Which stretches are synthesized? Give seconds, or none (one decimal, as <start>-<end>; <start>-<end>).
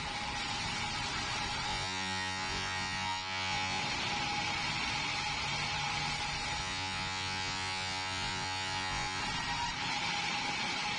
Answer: 1.7-3.8; 6.6-9.2